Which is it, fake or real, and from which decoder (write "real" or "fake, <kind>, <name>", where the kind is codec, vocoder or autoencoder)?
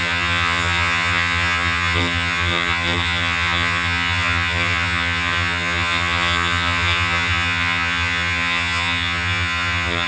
fake, vocoder, HiFi-GAN